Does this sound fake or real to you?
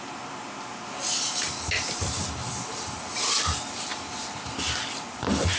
real